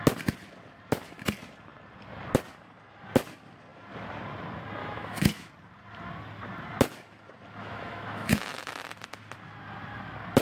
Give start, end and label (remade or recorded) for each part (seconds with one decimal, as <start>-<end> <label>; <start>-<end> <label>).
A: 0.0-4.8 recorded; 4.8-5.5 remade; 5.5-7.6 recorded; 7.6-8.7 remade; 8.7-10.4 recorded

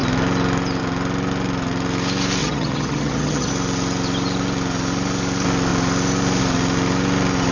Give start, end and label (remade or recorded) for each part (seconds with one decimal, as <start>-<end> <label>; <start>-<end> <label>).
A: 0.0-2.4 recorded; 2.4-3.5 remade; 3.5-7.5 recorded